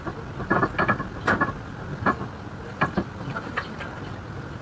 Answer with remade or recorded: recorded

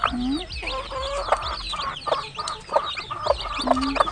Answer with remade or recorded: recorded